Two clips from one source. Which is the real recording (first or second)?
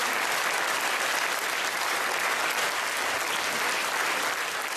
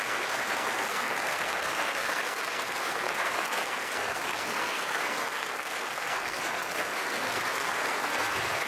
first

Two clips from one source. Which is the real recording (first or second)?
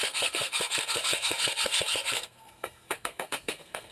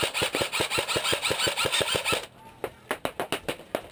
second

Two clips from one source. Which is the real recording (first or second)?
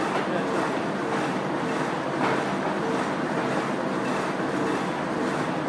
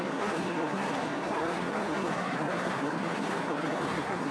first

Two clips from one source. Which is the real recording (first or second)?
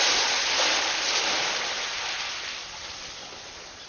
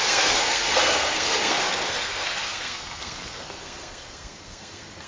first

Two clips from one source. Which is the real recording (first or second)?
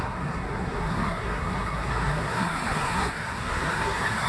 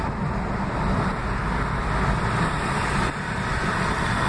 second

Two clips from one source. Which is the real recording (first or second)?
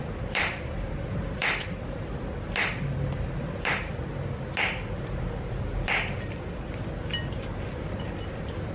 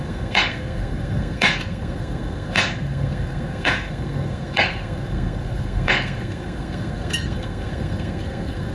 first